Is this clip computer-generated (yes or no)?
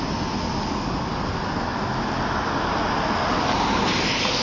no